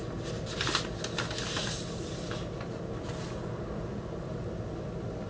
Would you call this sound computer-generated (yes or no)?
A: no